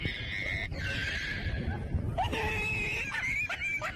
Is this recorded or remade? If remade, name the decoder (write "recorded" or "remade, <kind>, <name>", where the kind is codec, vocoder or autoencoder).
recorded